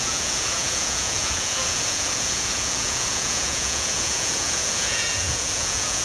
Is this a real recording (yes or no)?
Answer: no